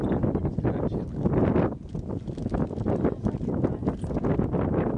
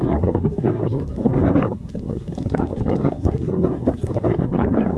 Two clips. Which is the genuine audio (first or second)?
first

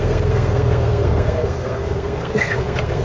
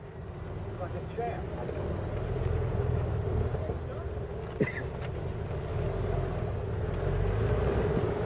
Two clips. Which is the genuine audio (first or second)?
second